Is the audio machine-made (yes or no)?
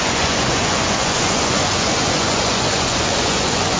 yes